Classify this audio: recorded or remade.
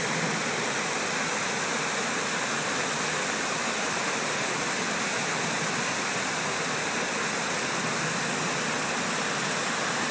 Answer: recorded